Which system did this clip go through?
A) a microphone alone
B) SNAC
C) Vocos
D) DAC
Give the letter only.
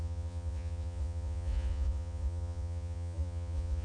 C